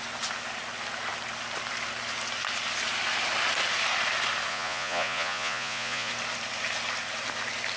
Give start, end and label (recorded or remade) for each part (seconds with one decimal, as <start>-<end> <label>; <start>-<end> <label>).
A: 0.0-4.5 recorded; 4.5-6.1 remade; 6.1-7.8 recorded